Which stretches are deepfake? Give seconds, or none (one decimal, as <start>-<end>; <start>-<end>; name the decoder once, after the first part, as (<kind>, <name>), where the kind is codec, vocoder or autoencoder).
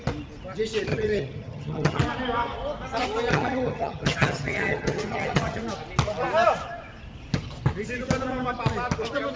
0.9-2.0 (vocoder, HiFi-GAN); 3.3-5.6